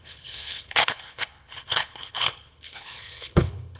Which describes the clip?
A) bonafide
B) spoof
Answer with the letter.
B